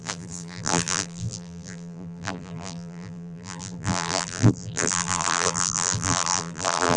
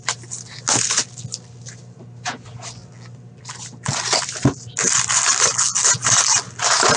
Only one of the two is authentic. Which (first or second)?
second